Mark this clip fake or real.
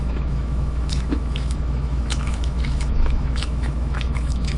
fake